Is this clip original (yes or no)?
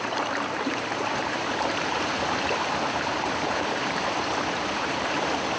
no